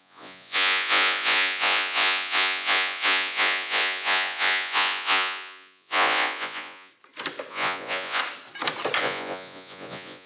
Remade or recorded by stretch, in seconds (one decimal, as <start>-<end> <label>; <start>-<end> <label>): 0.0-6.9 remade; 6.9-7.5 recorded; 7.5-8.2 remade; 8.2-9.0 recorded; 9.0-10.3 remade